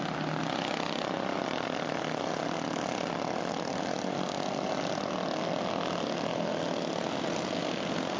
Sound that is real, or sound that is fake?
real